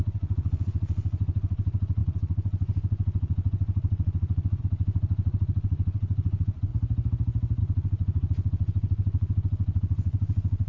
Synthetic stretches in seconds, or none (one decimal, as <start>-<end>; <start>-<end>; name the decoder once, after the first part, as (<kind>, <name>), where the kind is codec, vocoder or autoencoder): 0.0-6.7 (vocoder, Vocos); 7.6-10.7